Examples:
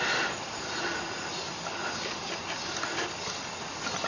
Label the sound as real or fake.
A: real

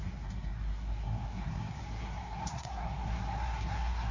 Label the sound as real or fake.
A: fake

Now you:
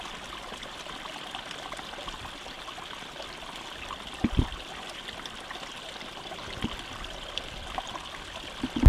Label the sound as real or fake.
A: real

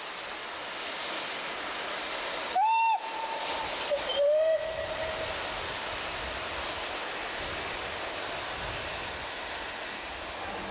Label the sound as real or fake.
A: real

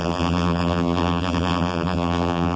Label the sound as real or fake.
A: fake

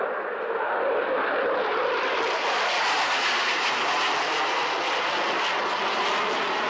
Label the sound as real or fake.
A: real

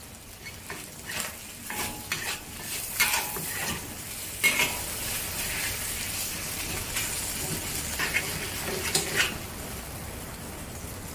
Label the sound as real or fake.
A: real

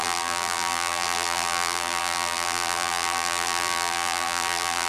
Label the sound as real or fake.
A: fake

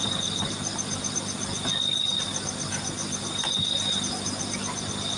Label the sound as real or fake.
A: real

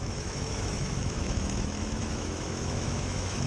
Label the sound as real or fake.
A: fake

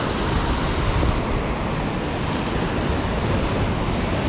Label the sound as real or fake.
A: real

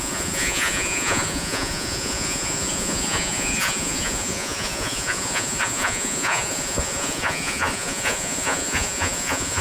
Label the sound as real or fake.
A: fake